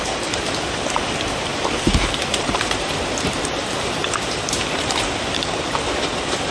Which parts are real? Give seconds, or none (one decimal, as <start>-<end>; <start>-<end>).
0.0-1.5; 5.4-6.5